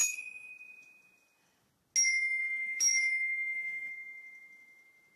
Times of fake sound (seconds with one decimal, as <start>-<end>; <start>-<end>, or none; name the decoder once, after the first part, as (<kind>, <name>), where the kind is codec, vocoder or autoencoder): 0.0-0.5 (autoencoder, DAC-VAE); 2.4-3.9